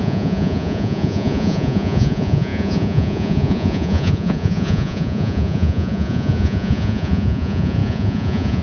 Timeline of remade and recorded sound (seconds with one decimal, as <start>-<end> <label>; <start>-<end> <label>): 0.0-8.6 remade